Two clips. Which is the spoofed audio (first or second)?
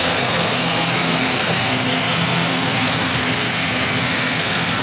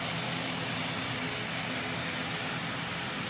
first